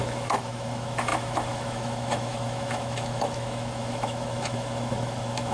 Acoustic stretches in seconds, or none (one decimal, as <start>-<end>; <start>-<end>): none